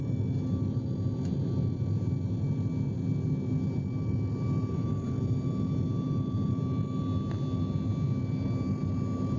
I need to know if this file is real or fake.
real